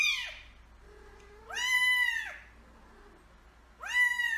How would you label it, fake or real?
real